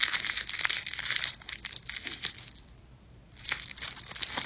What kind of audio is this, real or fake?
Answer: real